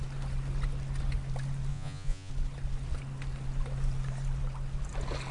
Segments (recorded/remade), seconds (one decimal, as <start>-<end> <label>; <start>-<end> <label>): 0.0-1.7 recorded; 1.7-2.3 remade; 2.3-5.3 recorded

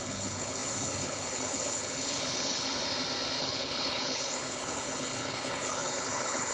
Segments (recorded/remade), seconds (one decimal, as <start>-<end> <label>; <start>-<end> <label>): 0.0-2.8 remade; 2.8-3.4 recorded; 3.4-6.5 remade

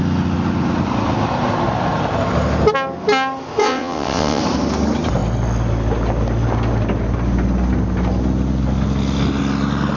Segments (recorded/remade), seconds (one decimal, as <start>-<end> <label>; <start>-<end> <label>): 0.0-3.6 recorded; 3.6-4.4 remade; 4.4-10.0 recorded